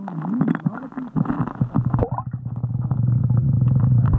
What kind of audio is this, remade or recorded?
recorded